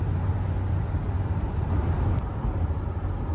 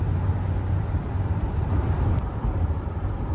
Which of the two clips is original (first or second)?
first